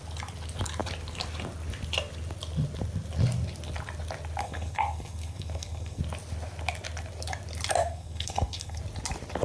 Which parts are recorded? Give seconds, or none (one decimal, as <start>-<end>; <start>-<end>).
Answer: 0.0-4.4; 6.0-7.8; 8.8-9.4